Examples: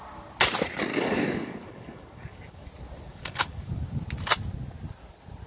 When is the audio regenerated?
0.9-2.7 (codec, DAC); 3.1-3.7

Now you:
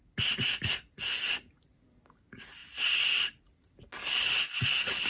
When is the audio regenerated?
none

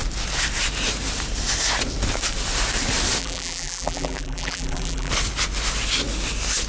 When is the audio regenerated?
3.2-5.1 (vocoder, BigVGAN v2)

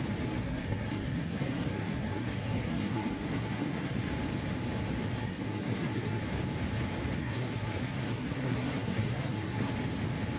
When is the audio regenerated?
0.4-4.1 (codec, SNAC); 5.2-6.2; 7.2-9.7

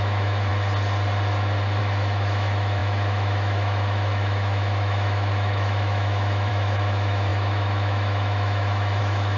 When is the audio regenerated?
0.0-0.5 (autoencoder, DAC-VAE); 1.8-9.4

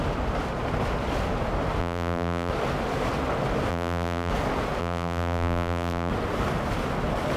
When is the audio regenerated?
1.8-2.5 (vocoder, BigVGAN v2); 3.7-4.3; 4.8-6.1

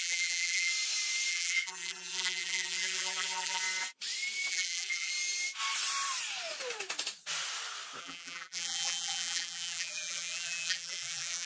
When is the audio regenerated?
0.0-0.7 (vocoder, BigVGAN v2); 1.3-3.6; 4.5-5.1; 8.0-11.5

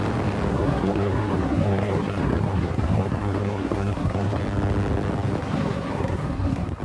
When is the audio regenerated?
0.5-4.4 (codec, SNAC); 5.4-6.8